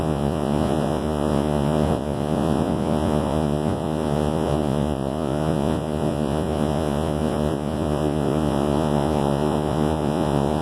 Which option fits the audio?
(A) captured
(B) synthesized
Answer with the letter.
B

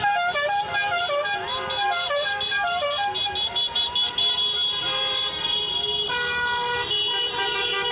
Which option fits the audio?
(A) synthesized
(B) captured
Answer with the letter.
B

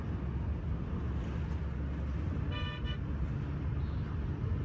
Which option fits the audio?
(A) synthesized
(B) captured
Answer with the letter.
B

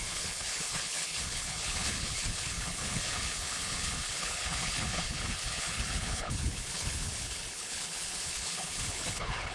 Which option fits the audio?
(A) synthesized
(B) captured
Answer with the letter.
A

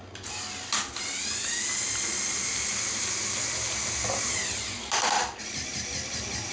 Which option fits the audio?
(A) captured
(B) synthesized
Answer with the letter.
A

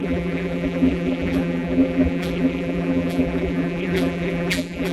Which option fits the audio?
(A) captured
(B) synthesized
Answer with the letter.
B